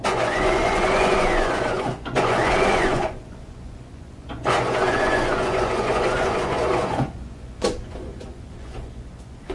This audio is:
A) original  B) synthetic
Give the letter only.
B